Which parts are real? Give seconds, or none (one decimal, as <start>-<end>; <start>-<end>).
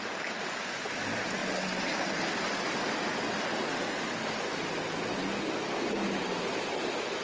0.0-7.2